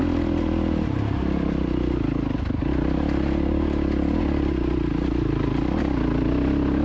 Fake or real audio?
real